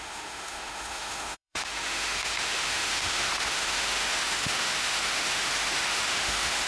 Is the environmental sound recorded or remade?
remade